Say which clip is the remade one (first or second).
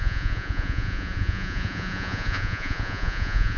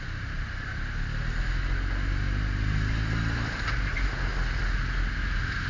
first